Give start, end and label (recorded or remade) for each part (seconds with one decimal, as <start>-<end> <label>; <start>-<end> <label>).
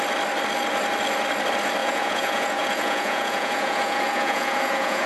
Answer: 0.0-1.8 recorded; 1.8-5.1 remade